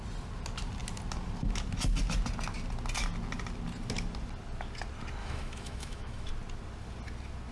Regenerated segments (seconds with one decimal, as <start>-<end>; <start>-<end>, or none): 5.2-6.3